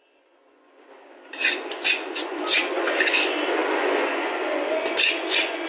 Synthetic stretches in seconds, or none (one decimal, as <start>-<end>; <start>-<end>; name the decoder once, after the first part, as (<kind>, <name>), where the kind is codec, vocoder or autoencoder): 0.0-5.7 (vocoder, Vocos)